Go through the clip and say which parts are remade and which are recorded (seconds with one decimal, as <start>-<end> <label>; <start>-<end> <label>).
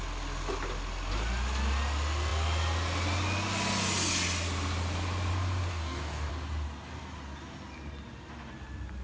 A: 0.0-5.7 recorded; 5.7-6.3 remade; 6.3-9.0 recorded